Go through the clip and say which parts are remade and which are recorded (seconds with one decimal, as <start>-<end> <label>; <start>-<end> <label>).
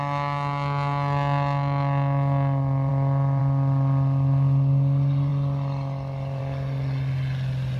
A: 0.0-7.8 recorded